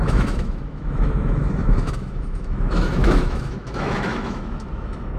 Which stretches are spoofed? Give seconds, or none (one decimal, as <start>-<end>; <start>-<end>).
0.0-5.2